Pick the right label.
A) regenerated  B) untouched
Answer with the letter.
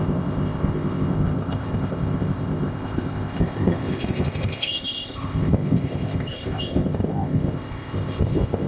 A